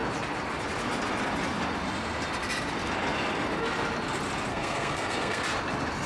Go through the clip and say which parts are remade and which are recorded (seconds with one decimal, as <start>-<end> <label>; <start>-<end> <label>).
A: 0.0-4.5 recorded; 4.5-5.4 remade; 5.4-6.1 recorded